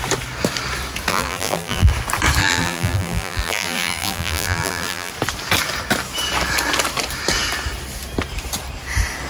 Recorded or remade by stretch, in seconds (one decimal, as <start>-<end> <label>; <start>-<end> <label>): 0.0-1.1 recorded; 1.1-1.9 remade; 1.9-2.4 recorded; 2.4-5.1 remade; 5.1-9.3 recorded